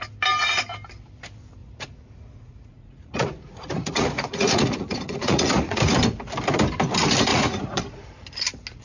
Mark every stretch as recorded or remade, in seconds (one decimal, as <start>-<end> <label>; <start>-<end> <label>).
0.0-1.6 recorded; 1.6-5.8 remade; 5.8-7.3 recorded; 7.3-7.8 remade; 7.8-8.8 recorded